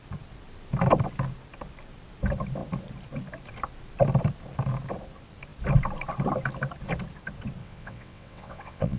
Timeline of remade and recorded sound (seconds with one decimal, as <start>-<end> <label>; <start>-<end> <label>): 0.0-7.6 recorded; 7.6-9.0 remade